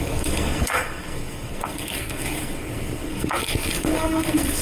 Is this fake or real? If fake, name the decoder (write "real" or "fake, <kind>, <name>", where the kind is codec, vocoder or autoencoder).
fake, codec, SNAC